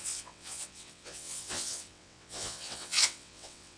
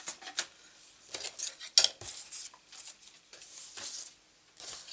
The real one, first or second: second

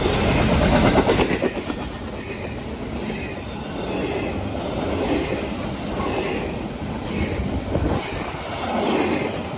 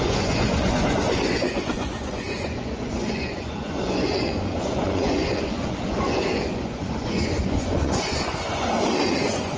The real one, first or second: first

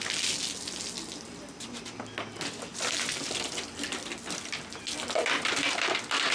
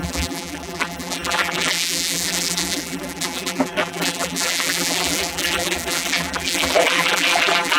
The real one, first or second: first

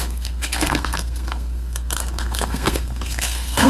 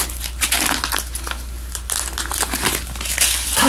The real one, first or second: second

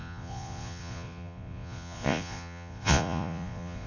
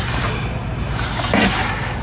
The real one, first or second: second